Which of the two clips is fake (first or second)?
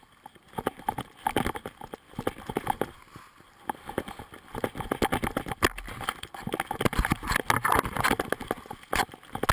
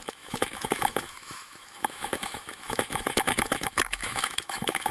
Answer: second